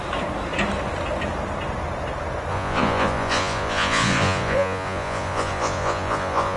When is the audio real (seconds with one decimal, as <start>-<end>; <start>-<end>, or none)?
0.0-2.5